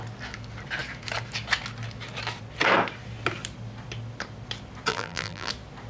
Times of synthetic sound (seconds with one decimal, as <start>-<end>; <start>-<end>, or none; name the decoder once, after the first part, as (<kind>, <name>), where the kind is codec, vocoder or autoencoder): 4.9-5.5 (vocoder, BigVGAN v2)